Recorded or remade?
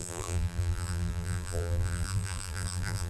remade